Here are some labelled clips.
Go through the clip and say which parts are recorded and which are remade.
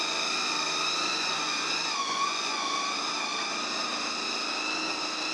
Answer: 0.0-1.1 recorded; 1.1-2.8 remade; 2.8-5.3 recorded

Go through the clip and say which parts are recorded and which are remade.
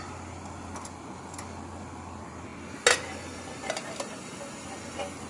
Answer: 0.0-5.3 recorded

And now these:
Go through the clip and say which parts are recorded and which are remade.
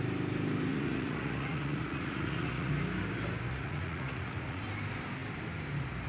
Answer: 0.0-0.7 recorded; 0.7-2.7 remade; 2.7-3.5 recorded; 3.5-4.6 remade; 4.6-6.1 recorded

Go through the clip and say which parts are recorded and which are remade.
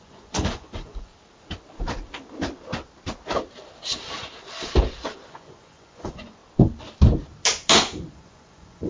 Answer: 0.0-1.1 remade; 1.1-5.3 recorded; 5.3-6.4 remade; 6.4-8.1 recorded; 8.1-8.9 remade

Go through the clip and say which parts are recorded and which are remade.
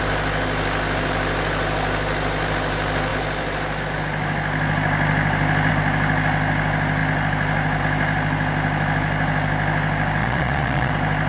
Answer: 0.0-10.2 recorded; 10.2-10.9 remade; 10.9-11.3 recorded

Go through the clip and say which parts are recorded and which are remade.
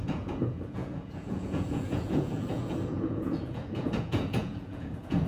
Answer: 0.0-5.3 remade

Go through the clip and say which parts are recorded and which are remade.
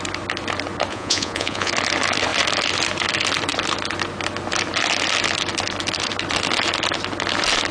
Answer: 0.0-0.9 recorded; 0.9-1.7 remade; 1.7-7.7 recorded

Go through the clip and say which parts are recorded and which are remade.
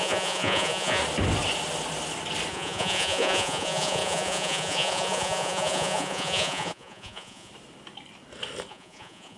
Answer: 0.0-1.0 remade; 1.0-2.5 recorded; 2.5-7.5 remade; 7.5-8.7 recorded; 8.7-9.4 remade